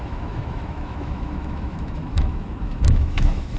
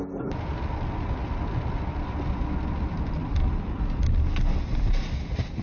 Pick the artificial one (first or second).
first